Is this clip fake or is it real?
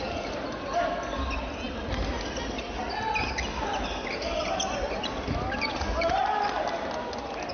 real